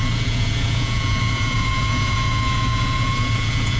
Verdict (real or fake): fake